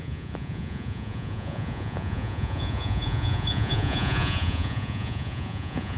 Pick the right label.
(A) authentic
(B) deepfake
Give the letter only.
B